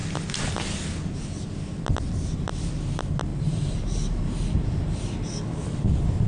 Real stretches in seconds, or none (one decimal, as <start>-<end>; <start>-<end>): 0.0-3.3; 5.1-6.3